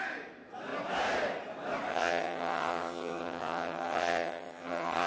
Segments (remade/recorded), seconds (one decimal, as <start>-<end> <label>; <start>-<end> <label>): 0.0-1.9 recorded; 1.9-5.1 remade

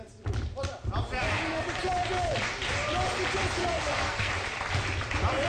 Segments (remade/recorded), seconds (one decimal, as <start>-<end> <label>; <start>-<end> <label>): 0.0-3.6 recorded; 3.6-4.3 remade; 4.3-5.5 recorded

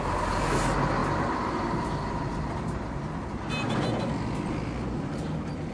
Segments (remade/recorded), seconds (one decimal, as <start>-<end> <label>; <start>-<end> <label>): 0.0-5.7 recorded

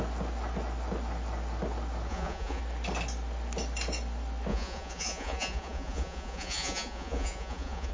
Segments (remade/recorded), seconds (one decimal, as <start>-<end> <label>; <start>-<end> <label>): 0.0-2.1 recorded; 2.1-2.6 remade; 2.6-4.5 recorded; 4.5-7.9 remade

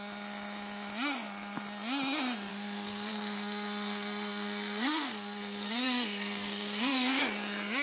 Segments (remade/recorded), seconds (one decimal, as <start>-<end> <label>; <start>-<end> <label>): 0.0-2.5 recorded; 2.5-7.2 remade; 7.2-7.8 recorded

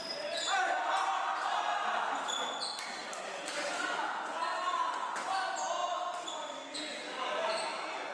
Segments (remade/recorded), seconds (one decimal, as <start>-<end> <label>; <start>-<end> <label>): 0.0-3.0 recorded; 3.0-3.7 remade; 3.7-5.8 recorded; 5.8-6.8 remade; 6.8-8.1 recorded